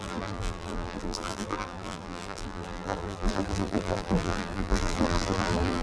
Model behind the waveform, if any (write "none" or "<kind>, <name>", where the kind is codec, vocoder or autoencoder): vocoder, BigVGAN v2